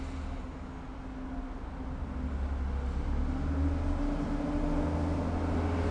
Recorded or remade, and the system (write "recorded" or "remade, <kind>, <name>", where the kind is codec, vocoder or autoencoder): recorded